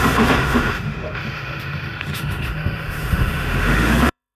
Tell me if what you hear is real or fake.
fake